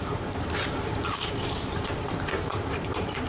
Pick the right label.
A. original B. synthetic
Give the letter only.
B